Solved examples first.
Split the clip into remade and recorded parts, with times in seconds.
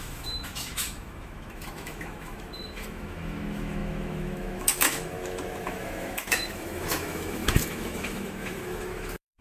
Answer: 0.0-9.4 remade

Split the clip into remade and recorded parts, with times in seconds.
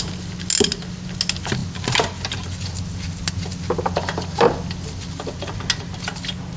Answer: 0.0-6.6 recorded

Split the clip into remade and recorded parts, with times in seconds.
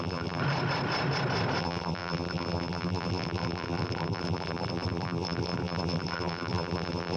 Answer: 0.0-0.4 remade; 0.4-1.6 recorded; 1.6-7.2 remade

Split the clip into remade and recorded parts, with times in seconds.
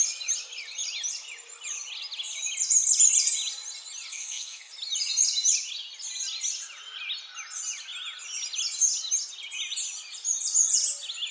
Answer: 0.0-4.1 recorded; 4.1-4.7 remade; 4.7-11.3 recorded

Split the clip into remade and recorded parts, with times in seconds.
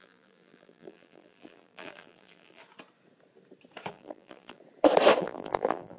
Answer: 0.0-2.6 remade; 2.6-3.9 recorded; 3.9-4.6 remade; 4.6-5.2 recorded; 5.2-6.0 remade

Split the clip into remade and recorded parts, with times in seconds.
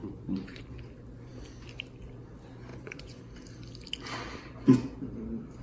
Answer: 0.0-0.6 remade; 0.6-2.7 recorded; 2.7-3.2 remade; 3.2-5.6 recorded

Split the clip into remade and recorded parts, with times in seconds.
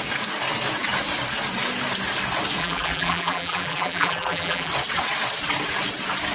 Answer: 0.0-2.6 recorded; 2.6-4.7 remade; 4.7-6.3 recorded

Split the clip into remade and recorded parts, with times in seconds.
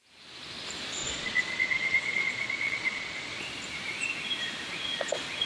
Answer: 0.0-1.0 recorded; 1.0-3.4 remade; 3.4-5.5 recorded